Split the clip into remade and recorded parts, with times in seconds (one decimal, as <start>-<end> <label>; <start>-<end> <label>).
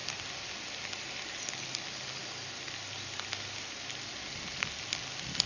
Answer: 0.0-5.5 recorded